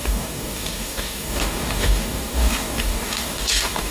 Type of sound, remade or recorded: remade